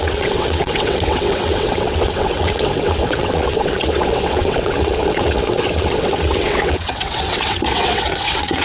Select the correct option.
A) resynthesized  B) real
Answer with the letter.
A